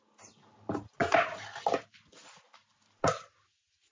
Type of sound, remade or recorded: recorded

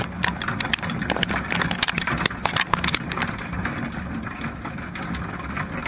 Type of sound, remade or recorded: recorded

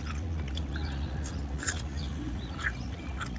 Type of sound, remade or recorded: remade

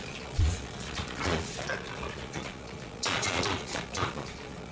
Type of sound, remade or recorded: remade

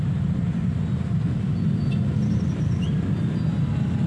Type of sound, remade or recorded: recorded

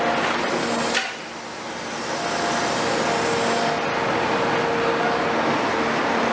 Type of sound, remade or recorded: recorded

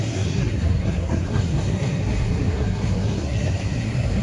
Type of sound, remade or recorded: remade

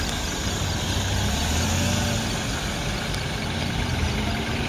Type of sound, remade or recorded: recorded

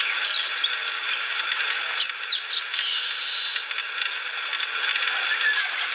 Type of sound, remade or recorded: recorded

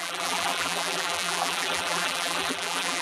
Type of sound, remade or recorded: remade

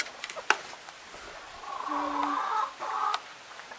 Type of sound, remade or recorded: recorded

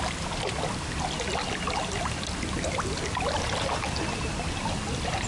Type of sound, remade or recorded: recorded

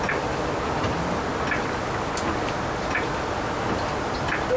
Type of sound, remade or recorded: recorded